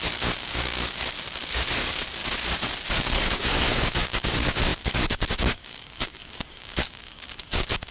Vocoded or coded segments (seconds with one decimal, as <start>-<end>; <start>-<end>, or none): 0.0-2.2; 2.9-7.9